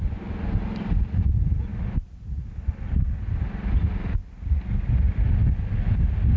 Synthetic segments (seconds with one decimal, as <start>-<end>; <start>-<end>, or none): none